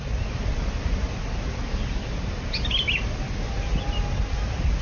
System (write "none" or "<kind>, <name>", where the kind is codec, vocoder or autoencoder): none